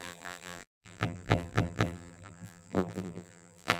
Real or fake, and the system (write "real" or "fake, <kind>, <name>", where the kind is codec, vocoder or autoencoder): fake, vocoder, BigVGAN v2